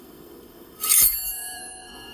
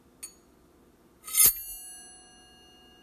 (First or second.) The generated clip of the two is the first